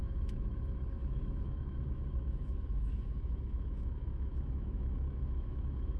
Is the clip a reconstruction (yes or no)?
yes